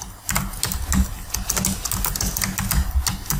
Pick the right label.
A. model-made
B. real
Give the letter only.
B